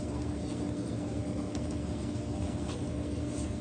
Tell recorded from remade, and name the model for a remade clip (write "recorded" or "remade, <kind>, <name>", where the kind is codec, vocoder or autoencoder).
remade, codec, SNAC